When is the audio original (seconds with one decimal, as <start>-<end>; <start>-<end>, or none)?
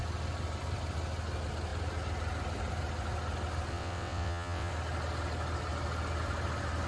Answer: 0.0-3.7; 4.7-6.9